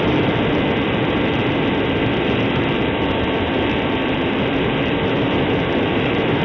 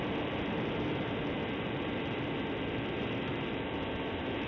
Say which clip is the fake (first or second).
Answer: first